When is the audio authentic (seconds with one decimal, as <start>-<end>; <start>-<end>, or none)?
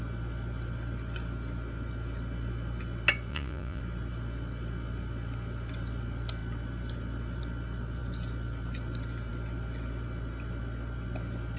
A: 0.0-3.3; 3.8-11.6